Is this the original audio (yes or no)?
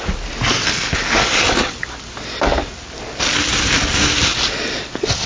yes